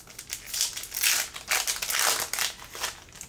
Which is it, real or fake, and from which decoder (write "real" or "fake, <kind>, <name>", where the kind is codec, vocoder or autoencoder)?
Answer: real